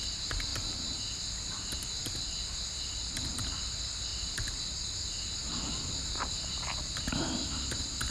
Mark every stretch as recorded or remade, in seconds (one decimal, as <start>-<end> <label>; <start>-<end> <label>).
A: 0.0-8.1 recorded

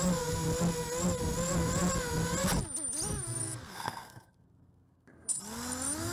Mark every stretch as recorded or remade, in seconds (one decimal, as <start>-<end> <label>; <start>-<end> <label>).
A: 0.0-3.4 recorded; 3.4-5.4 remade; 5.4-6.1 recorded

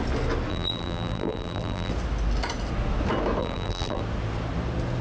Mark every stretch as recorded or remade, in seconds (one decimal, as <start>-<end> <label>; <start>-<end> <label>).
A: 0.0-0.5 recorded; 0.5-1.9 remade; 1.9-3.4 recorded; 3.4-4.0 remade; 4.0-5.0 recorded

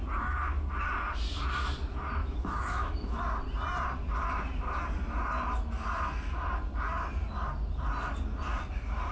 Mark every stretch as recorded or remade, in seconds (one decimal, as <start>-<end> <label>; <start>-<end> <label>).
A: 0.0-2.2 recorded; 2.2-3.2 remade; 3.2-9.1 recorded

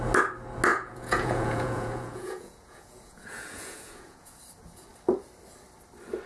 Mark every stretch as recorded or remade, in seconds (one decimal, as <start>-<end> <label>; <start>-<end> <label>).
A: 0.0-0.7 recorded; 0.7-4.4 remade; 4.4-6.3 recorded

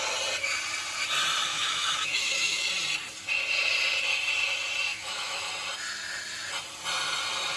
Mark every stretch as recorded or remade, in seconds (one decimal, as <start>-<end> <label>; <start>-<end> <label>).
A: 0.0-1.5 recorded; 1.5-2.7 remade; 2.7-4.9 recorded; 4.9-5.5 remade; 5.5-7.6 recorded

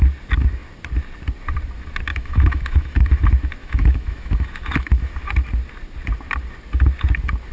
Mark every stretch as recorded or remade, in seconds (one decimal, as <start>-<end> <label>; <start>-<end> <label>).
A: 0.0-2.1 recorded; 2.1-3.1 remade; 3.1-3.6 recorded; 3.6-5.1 remade; 5.1-7.5 recorded